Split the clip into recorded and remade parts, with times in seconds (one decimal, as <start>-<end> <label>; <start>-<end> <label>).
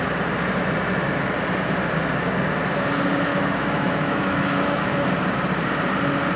0.0-3.3 recorded; 3.3-5.1 remade; 5.1-6.4 recorded